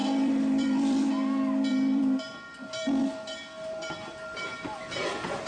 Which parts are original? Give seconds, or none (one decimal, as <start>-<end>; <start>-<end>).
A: 1.1-1.7; 5.0-5.5

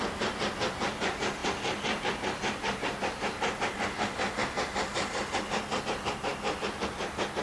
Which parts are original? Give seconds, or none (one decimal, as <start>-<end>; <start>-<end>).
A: 0.0-7.4

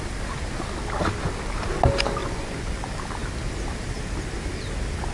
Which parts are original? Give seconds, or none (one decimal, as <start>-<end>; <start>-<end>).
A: 0.0-2.2; 2.8-5.1